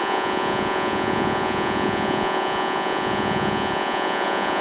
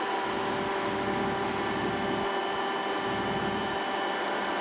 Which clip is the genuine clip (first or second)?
second